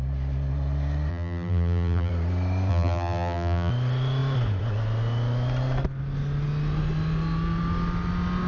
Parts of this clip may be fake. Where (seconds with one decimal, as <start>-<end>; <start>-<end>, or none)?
1.1-2.1; 2.7-3.7